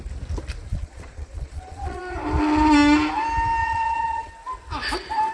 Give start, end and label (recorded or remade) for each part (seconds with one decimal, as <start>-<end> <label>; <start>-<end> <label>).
0.0-0.7 recorded; 0.7-2.0 remade; 2.0-3.6 recorded; 3.6-4.3 remade; 4.3-5.3 recorded